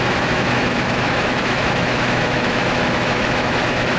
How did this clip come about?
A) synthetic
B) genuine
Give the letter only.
A